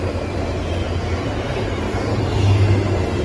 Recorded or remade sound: recorded